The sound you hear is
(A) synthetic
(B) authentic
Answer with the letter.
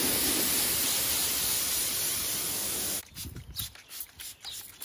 B